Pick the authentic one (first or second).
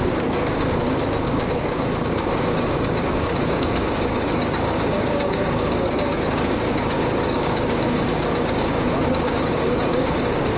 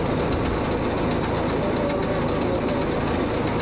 second